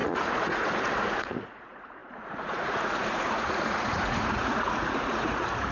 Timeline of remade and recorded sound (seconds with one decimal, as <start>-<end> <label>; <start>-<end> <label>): 0.0-5.7 remade